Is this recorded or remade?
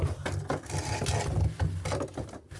recorded